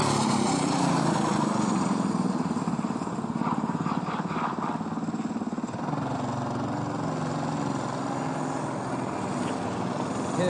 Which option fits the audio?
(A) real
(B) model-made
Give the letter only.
A